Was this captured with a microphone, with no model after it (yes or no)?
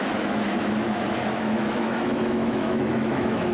no